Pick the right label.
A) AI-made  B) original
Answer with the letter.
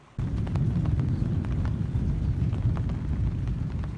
B